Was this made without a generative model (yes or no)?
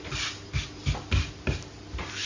yes